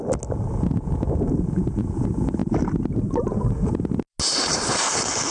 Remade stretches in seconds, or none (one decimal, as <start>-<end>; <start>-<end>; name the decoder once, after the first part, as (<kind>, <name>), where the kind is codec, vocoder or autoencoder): none